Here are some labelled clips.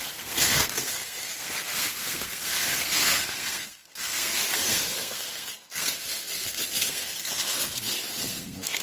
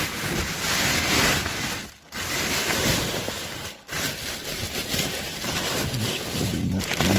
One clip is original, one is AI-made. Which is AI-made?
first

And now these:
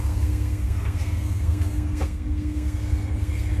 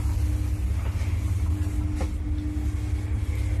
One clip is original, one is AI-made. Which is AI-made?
first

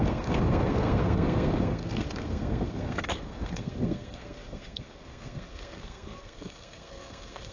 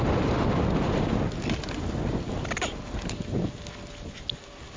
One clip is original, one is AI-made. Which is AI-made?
first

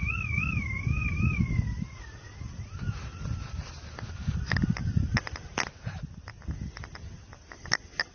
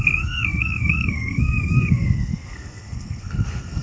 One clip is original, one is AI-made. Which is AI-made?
second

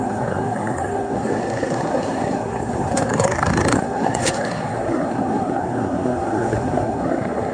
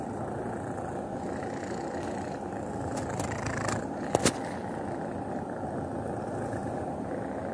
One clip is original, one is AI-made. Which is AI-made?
first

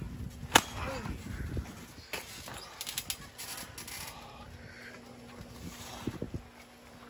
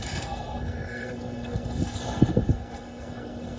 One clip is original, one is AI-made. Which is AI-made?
second